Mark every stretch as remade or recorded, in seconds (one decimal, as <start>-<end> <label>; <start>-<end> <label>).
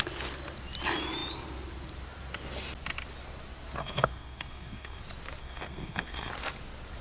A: 0.0-3.8 recorded; 3.8-5.0 remade; 5.0-5.4 recorded; 5.4-6.3 remade; 6.3-7.0 recorded